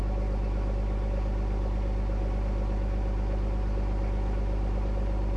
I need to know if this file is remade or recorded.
recorded